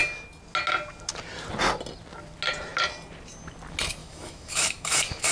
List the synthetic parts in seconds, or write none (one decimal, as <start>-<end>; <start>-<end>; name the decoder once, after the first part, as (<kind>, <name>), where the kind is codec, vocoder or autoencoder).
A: 4.0-5.3 (autoencoder, DAC-VAE)